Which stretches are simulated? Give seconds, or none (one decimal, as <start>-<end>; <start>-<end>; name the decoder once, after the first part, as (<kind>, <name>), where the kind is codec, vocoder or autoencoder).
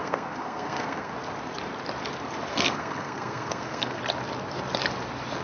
0.0-1.1 (codec, SNAC); 2.5-4.0